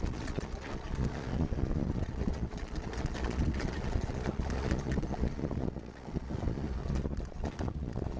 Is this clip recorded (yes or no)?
no